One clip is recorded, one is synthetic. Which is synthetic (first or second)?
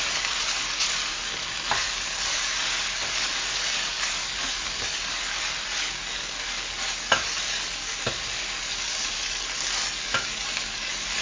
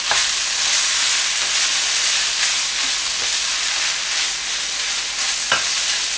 first